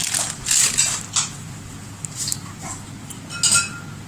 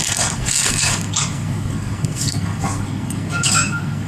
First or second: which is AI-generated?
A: second